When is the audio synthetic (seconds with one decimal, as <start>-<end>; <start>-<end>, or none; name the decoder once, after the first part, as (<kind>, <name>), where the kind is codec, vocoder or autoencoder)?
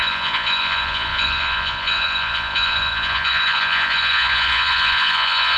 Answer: 0.0-5.6 (vocoder, Vocos)